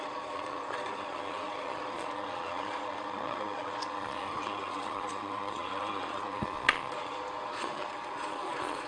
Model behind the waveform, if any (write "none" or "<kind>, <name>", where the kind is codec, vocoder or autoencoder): vocoder, Vocos